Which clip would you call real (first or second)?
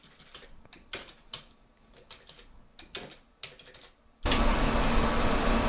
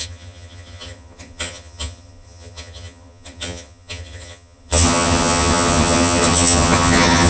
first